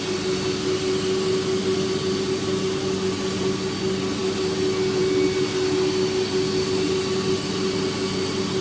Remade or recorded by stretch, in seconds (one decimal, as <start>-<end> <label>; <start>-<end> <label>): 0.0-8.6 recorded